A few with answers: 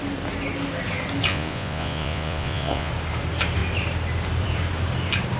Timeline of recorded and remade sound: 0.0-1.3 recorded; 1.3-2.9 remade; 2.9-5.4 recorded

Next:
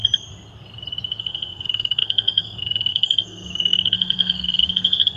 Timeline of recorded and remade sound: 0.0-1.2 recorded; 1.2-5.2 remade

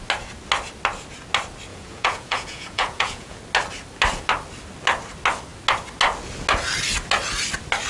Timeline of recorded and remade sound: 0.0-1.7 recorded; 1.7-3.4 remade; 3.4-7.9 recorded

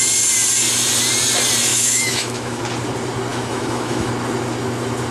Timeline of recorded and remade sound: 0.0-1.7 recorded; 1.7-2.6 remade; 2.6-3.3 recorded; 3.3-4.1 remade; 4.1-5.1 recorded

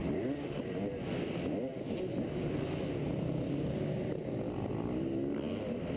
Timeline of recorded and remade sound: 0.0-6.0 recorded

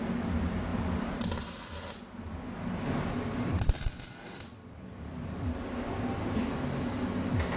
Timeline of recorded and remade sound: 0.0-7.6 recorded